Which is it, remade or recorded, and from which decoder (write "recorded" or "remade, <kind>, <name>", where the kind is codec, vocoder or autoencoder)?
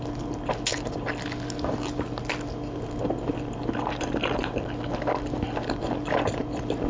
recorded